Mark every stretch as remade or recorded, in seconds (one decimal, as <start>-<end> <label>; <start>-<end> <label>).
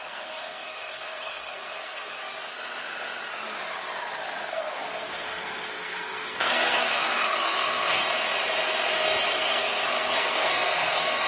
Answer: 0.0-2.2 remade; 2.2-4.5 recorded; 4.5-8.0 remade; 8.0-9.3 recorded; 9.3-11.3 remade